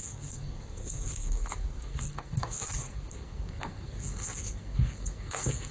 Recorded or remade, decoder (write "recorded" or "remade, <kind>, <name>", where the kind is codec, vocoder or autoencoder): remade, codec, SNAC